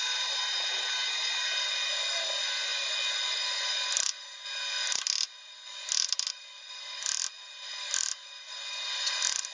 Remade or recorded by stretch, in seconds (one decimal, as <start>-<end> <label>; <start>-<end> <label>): 0.0-9.5 recorded